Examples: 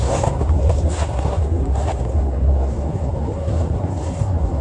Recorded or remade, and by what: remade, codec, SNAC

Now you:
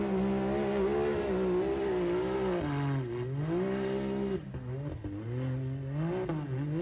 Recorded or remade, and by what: recorded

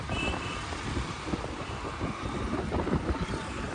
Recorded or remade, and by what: remade, vocoder, BigVGAN v2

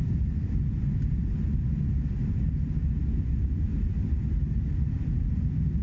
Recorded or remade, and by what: recorded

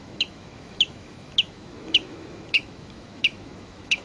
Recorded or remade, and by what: remade, autoencoder, DAC-VAE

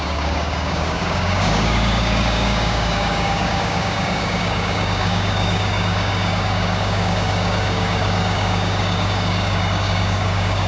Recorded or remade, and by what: remade, codec, DAC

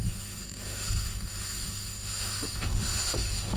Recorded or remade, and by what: remade, autoencoder, DAC-VAE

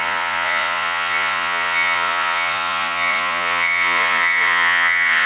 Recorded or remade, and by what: remade, vocoder, Vocos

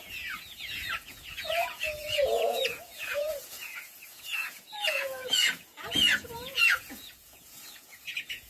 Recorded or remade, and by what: remade, vocoder, Vocos